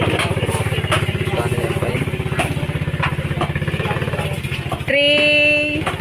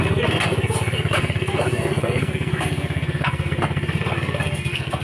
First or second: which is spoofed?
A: second